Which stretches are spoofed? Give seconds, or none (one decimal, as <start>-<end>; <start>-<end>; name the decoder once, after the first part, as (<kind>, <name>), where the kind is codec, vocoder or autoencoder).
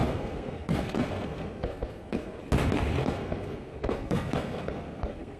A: 0.0-2.4 (codec, SNAC); 3.0-5.4